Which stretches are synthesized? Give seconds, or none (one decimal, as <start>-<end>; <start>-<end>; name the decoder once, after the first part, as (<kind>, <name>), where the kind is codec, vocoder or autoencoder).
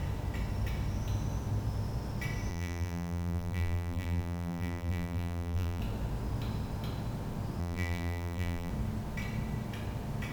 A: 2.5-5.8 (vocoder, BigVGAN v2); 7.6-8.7